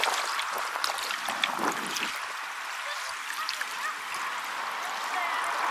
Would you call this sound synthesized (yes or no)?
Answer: no